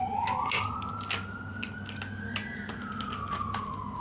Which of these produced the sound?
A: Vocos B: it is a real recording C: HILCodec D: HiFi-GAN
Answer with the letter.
B